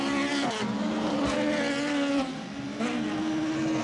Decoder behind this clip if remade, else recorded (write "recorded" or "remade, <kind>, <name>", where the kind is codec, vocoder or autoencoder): recorded